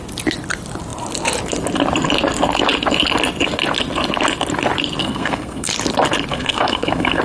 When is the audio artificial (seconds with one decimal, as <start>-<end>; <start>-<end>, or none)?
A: 5.0-5.7; 6.3-7.2